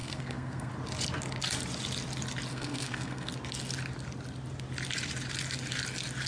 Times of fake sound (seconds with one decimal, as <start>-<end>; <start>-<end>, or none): 0.0-0.7; 2.5-3.3